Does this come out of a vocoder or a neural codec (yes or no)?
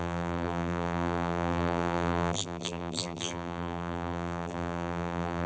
yes